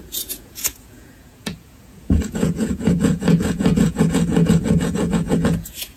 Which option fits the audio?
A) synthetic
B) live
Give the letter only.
A